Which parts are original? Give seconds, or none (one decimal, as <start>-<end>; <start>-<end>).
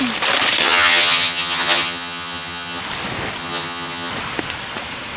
0.0-0.6; 2.8-3.4; 4.1-5.2